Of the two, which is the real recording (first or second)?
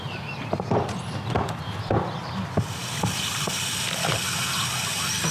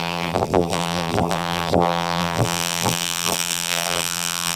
first